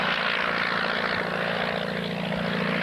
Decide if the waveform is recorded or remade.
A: recorded